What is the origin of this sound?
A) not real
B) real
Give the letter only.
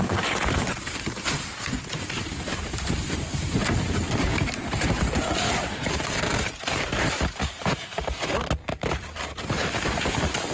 A